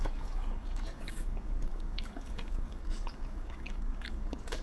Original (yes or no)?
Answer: no